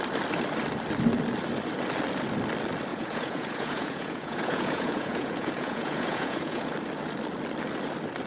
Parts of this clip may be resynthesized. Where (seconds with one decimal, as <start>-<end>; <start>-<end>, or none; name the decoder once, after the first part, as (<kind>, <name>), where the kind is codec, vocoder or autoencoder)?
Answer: 2.9-6.7 (vocoder, Vocos)